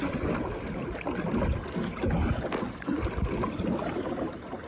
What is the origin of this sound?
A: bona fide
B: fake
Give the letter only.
A